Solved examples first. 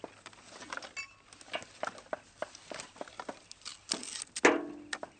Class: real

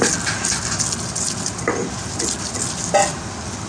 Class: real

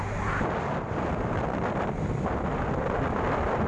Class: real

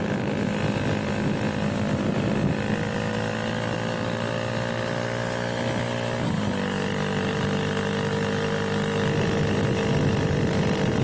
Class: real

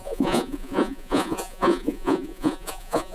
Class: fake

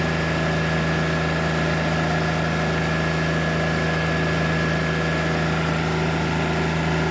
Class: real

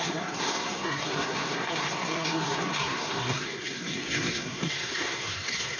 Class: fake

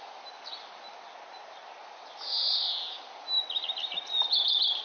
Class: real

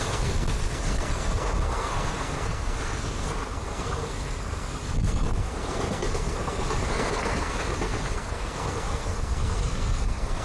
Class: fake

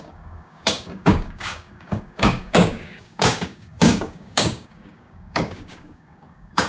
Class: fake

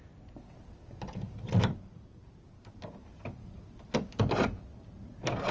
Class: real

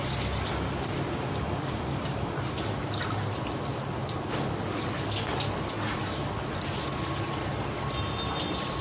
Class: real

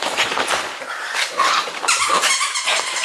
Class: fake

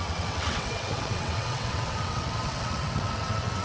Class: fake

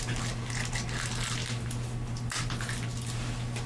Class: real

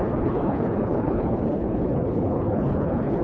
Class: fake